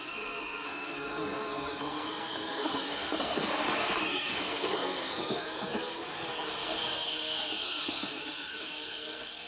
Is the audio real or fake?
fake